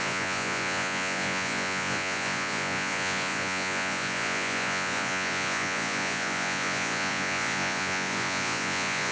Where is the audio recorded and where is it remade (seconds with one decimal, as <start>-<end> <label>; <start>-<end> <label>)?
0.0-9.1 remade